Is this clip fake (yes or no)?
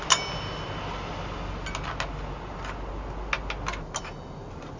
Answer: no